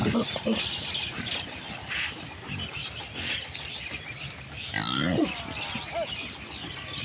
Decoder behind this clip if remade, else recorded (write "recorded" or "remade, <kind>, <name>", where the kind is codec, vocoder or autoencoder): recorded